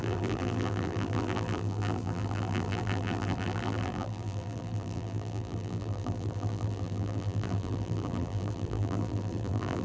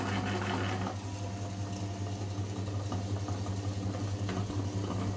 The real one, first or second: second